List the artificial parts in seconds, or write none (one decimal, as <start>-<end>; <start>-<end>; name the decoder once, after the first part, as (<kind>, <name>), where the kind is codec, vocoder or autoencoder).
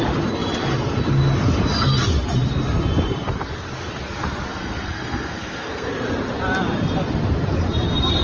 4.5-5.9 (codec, SNAC)